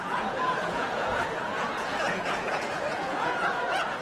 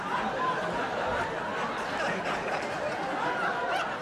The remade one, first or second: first